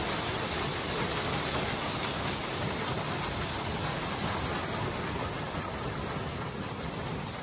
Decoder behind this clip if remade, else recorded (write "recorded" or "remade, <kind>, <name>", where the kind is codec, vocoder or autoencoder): recorded